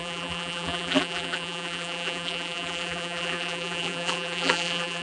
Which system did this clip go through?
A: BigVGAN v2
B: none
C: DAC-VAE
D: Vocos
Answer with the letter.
A